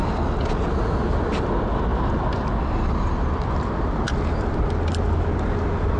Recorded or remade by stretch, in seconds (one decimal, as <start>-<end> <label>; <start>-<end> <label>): 0.0-6.0 recorded